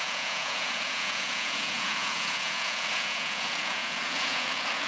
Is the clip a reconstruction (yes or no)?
yes